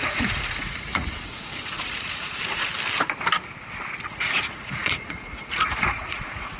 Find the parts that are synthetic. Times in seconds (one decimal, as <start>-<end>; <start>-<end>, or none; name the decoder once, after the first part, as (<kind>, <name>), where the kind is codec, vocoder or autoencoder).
0.0-2.7 (vocoder, Vocos); 4.1-6.6